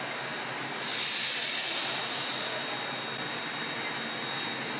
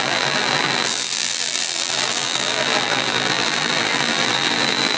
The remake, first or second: second